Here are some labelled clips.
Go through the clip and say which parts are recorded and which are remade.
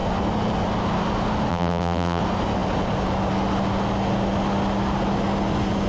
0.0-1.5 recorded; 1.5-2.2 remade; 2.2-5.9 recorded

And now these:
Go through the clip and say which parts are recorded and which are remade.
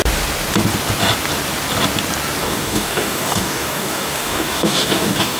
0.0-2.4 recorded; 2.4-5.4 remade